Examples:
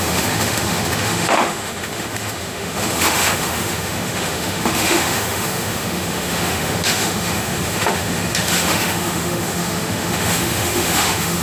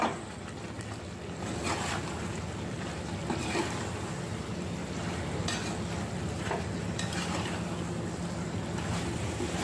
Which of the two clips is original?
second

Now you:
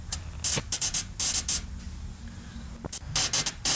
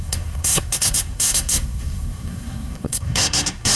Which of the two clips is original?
first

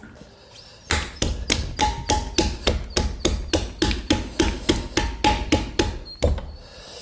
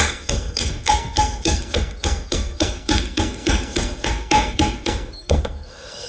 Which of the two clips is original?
first